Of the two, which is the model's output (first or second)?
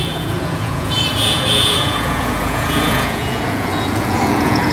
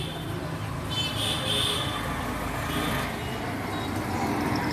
first